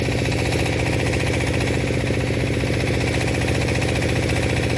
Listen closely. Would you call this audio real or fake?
real